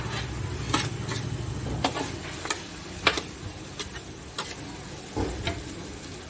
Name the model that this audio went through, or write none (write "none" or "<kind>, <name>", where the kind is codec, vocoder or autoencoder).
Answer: none